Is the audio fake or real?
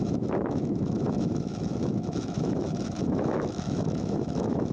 fake